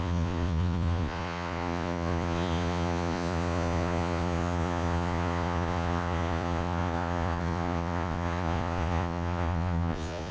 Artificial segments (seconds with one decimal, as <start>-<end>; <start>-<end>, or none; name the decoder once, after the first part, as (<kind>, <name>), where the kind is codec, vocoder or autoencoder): 0.0-10.3 (vocoder, Vocos)